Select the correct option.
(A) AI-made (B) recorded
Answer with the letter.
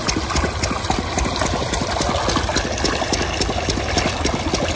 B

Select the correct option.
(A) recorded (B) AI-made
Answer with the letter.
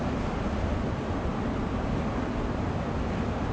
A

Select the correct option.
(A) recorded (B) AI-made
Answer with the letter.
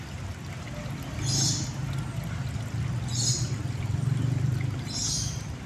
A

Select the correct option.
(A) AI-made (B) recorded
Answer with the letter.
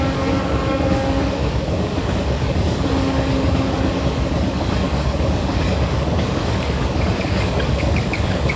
A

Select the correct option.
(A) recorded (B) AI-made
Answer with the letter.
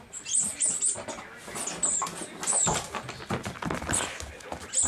A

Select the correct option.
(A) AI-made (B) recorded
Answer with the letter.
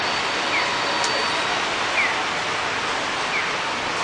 B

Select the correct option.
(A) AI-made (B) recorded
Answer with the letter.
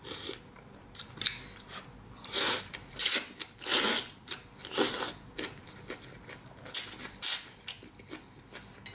B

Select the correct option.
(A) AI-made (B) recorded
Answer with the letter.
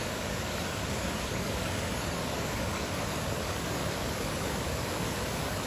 A